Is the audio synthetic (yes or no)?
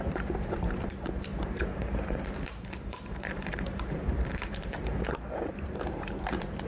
yes